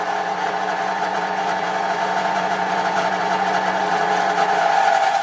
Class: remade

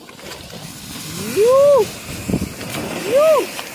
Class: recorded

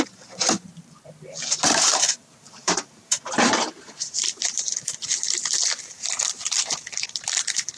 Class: remade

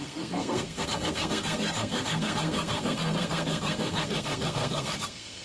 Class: remade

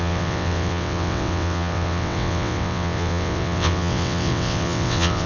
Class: remade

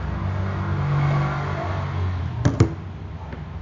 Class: recorded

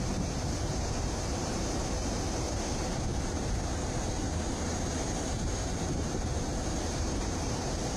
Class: remade